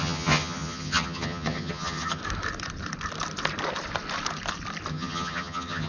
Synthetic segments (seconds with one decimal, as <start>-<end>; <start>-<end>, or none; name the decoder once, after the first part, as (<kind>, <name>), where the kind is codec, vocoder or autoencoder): 0.0-2.2 (vocoder, HiFi-GAN); 4.9-5.9